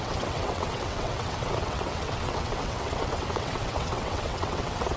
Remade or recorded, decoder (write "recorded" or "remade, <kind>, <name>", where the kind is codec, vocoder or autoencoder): remade, vocoder, WaveNeXt